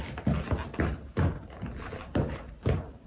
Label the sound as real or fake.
real